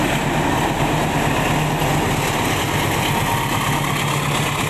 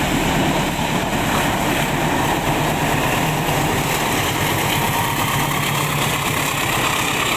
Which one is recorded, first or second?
first